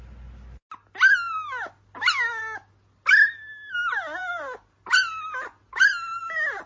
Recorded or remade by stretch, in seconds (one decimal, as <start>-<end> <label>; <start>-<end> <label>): 0.0-6.7 recorded